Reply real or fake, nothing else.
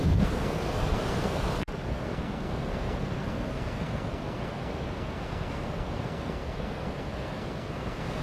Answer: fake